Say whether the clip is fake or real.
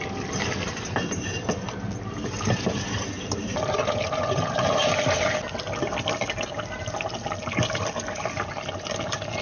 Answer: real